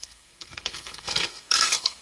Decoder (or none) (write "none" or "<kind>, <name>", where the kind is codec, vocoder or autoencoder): codec, SNAC